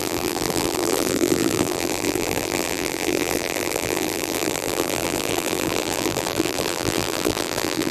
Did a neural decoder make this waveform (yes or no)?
yes